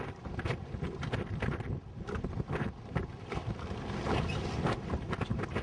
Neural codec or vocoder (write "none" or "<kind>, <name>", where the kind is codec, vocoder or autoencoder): vocoder, BigVGAN v2